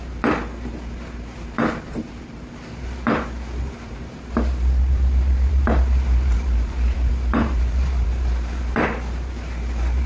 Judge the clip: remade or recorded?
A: remade